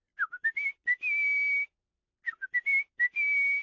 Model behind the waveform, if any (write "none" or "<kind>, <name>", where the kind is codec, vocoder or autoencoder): none